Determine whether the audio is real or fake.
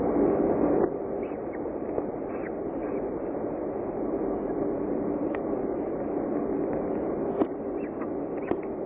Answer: real